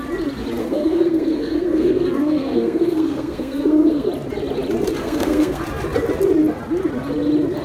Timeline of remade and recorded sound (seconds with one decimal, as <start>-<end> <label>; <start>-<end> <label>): 0.0-0.6 recorded; 0.6-4.1 remade; 4.1-5.0 recorded; 5.0-5.6 remade; 5.6-7.6 recorded

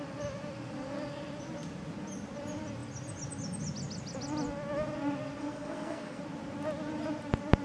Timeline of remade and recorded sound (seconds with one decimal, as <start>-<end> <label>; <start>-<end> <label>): 0.0-5.4 recorded; 5.4-6.2 remade; 6.2-7.6 recorded

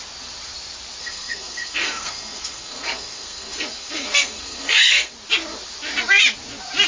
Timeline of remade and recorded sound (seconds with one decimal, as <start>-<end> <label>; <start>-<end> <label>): 0.0-1.0 recorded; 1.0-5.1 remade; 5.1-6.9 recorded

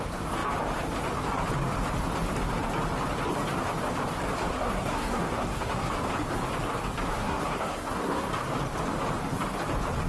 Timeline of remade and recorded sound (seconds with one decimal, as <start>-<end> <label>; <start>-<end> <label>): 0.0-4.5 recorded; 4.5-5.9 remade; 5.9-7.1 recorded; 7.1-8.3 remade; 8.3-10.1 recorded

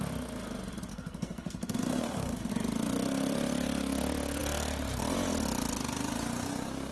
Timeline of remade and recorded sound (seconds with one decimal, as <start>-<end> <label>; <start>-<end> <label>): 0.0-0.9 recorded; 0.9-2.5 remade; 2.5-6.9 recorded

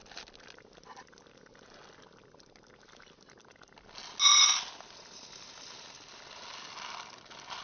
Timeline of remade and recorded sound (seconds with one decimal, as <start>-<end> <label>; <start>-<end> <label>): 0.0-7.6 recorded